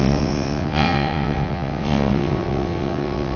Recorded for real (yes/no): no